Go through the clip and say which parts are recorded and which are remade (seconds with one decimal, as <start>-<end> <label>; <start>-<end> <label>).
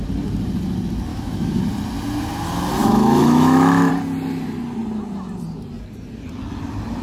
0.0-1.1 recorded; 1.1-1.6 remade; 1.6-2.8 recorded; 2.8-3.9 remade; 3.9-7.0 recorded